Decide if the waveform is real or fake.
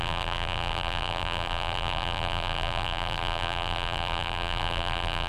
fake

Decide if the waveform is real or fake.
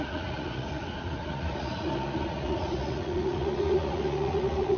fake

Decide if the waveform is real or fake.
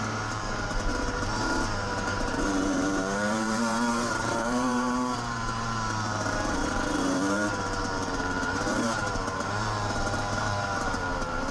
fake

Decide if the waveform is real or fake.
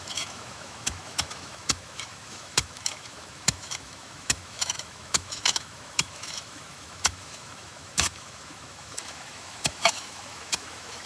fake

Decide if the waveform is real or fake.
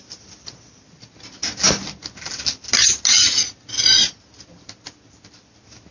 real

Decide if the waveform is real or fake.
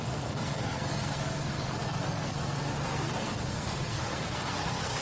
fake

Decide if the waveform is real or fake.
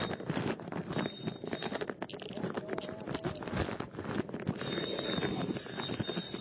real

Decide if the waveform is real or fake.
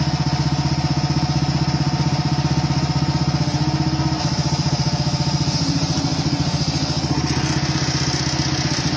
real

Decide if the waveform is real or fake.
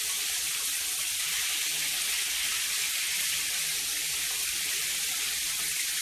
real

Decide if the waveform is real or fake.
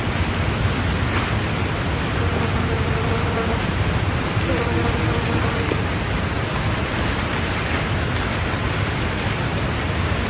real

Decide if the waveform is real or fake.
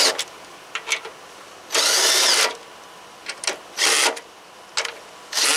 real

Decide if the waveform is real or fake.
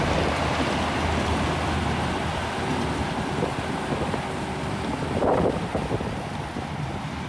real